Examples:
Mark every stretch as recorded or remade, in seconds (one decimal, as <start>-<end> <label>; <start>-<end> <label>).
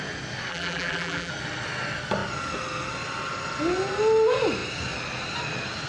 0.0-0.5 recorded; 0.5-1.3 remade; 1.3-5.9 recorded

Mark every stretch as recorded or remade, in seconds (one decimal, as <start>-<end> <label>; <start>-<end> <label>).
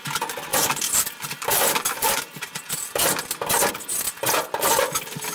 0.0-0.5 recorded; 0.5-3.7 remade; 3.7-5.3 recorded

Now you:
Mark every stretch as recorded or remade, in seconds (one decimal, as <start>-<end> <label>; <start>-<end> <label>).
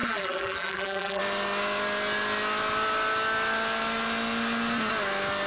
0.0-1.2 remade; 1.2-5.5 recorded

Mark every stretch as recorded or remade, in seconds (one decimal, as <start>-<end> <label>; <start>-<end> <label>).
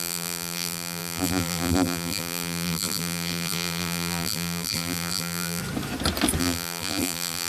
0.0-5.6 remade; 5.6-6.4 recorded; 6.4-7.5 remade